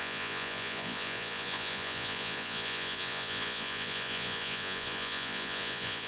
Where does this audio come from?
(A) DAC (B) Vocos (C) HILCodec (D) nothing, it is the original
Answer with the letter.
B